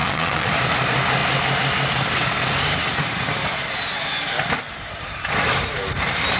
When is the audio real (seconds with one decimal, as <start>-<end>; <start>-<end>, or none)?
0.5-6.4